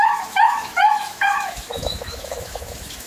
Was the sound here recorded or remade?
remade